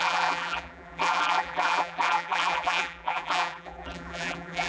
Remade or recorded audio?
remade